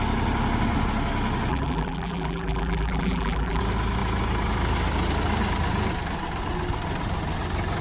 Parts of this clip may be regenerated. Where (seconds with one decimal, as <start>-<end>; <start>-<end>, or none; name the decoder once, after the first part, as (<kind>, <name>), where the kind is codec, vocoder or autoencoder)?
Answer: 1.5-3.6 (vocoder, BigVGAN v2)

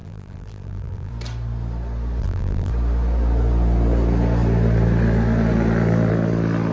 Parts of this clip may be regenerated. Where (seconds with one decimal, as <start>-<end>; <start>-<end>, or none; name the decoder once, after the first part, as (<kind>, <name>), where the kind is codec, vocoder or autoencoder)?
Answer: 0.0-1.1 (vocoder, BigVGAN v2); 2.2-2.7

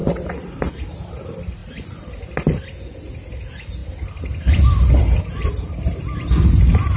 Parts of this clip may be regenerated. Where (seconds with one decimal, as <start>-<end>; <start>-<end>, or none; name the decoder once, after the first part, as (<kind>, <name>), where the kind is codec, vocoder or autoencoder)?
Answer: 0.0-0.6 (vocoder, BigVGAN v2); 1.6-2.6; 3.8-5.7

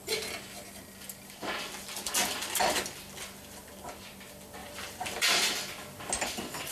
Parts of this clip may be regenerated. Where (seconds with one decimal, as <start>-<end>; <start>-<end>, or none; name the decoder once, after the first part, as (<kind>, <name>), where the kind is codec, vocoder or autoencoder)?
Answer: 4.6-5.5 (vocoder, BigVGAN v2)

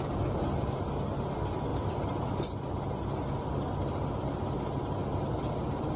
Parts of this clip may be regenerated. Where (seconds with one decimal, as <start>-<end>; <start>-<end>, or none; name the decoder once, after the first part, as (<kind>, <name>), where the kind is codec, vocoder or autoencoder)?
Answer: 1.7-2.3 (vocoder, BigVGAN v2); 3.8-4.3

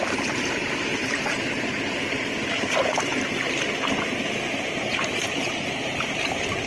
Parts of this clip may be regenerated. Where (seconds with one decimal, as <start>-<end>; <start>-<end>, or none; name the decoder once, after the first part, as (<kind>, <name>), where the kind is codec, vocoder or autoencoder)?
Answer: 0.0-3.3 (vocoder, BigVGAN v2); 4.5-6.7